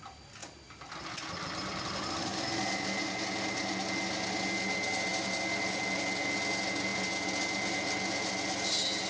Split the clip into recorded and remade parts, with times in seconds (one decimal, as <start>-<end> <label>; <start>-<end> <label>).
0.0-9.1 recorded